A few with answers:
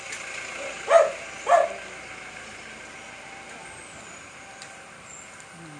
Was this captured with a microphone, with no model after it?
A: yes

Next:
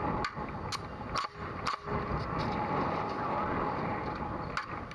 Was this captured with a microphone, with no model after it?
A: yes